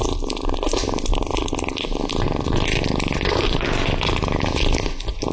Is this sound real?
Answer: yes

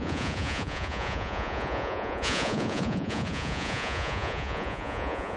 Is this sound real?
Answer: no